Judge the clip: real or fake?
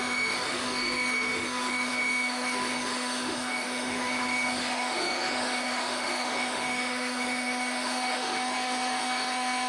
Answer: fake